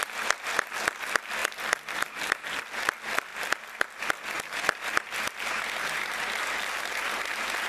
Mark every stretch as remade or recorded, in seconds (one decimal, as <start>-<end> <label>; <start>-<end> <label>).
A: 0.0-1.4 recorded; 1.4-2.6 remade; 2.6-7.7 recorded